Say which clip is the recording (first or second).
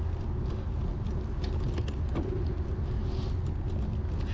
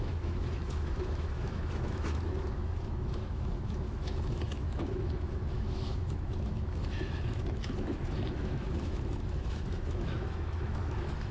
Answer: first